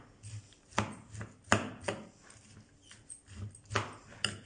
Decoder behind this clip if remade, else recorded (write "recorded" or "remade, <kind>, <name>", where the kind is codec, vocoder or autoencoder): recorded